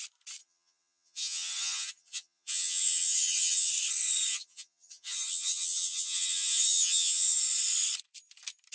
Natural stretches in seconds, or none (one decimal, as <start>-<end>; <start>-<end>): 0.0-0.4; 3.7-4.3; 7.4-8.7